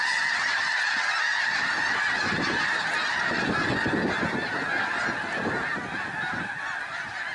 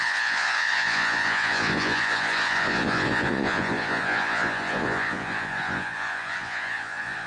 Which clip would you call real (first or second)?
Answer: first